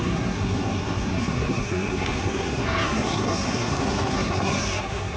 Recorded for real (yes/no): no